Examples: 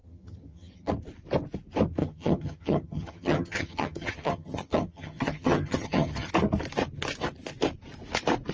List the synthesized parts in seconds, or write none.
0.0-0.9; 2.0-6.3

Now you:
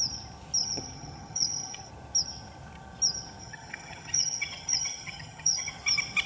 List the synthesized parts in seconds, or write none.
0.6-1.9; 3.4-5.7

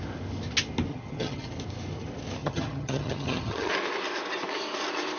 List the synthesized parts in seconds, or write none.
0.9-1.5; 2.4-3.7

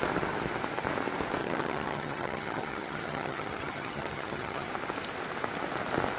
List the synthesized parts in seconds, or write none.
1.4-4.7

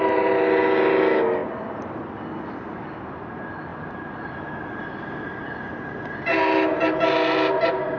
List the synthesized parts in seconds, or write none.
none

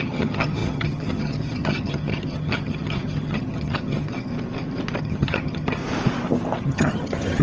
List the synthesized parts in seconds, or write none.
0.0-4.3; 5.0-5.8; 6.6-7.4

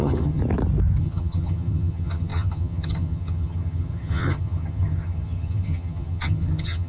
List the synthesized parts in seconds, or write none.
0.0-0.4; 1.0-6.9

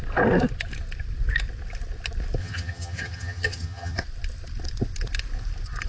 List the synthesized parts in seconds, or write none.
2.4-4.0